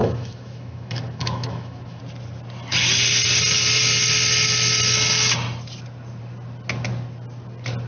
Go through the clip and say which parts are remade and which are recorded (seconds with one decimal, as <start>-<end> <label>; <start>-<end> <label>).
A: 0.0-2.0 remade; 2.0-7.9 recorded